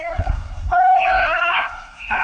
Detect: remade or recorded remade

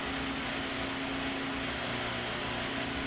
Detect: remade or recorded recorded